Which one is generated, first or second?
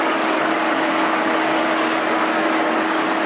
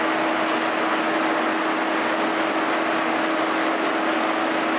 first